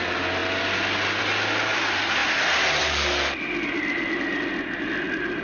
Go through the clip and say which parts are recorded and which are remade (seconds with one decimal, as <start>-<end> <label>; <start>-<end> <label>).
0.0-5.4 recorded